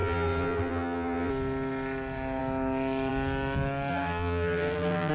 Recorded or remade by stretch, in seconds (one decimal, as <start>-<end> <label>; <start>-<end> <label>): 0.0-1.3 remade; 1.3-3.9 recorded; 3.9-5.1 remade